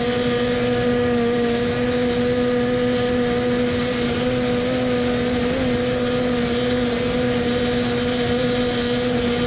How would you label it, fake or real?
real